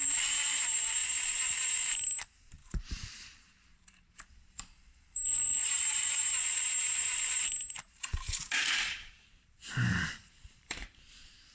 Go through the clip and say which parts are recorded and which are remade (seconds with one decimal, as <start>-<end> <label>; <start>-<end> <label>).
0.0-11.5 remade